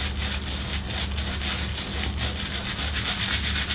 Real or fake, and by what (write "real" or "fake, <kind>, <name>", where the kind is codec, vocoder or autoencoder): real